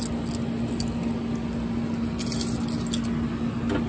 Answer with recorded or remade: recorded